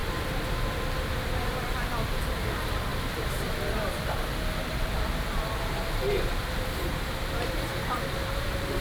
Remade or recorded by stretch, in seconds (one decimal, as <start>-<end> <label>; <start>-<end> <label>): 0.0-1.4 recorded; 1.4-8.8 remade